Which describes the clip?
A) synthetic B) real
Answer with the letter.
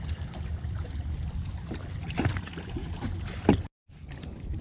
B